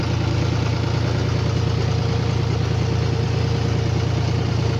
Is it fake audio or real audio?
real